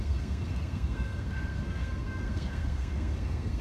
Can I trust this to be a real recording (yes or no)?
no